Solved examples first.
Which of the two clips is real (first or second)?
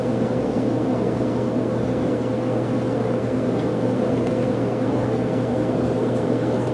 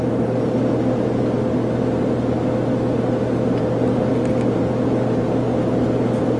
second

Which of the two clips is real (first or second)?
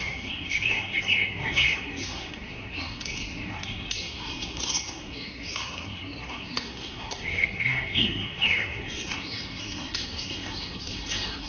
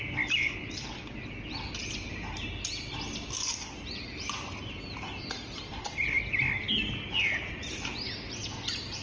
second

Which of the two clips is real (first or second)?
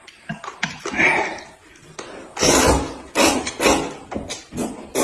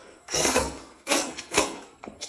first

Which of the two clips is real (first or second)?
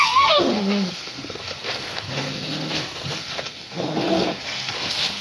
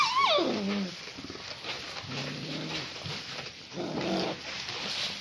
second